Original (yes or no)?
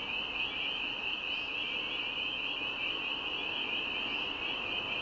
yes